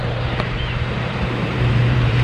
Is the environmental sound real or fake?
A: fake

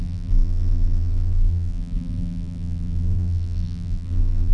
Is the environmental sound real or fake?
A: fake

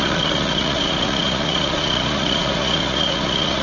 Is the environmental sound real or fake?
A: fake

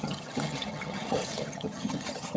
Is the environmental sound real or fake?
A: fake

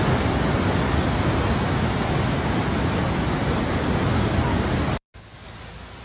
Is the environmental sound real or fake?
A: real